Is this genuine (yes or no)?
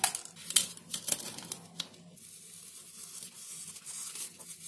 yes